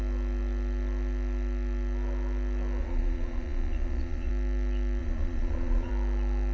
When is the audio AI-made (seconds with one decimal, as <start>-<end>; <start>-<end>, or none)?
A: 2.8-4.3; 5.0-5.9